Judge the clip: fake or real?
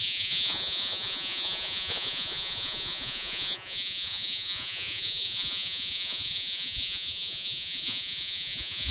fake